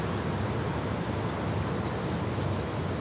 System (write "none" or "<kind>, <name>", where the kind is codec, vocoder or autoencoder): none